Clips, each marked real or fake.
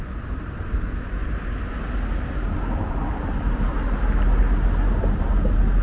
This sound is real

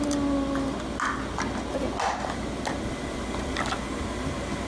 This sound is real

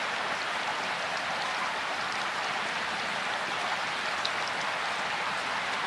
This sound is real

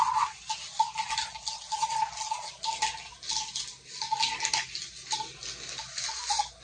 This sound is real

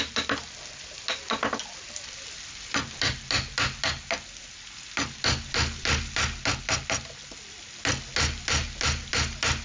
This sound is real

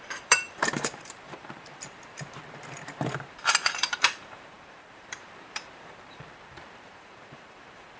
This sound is fake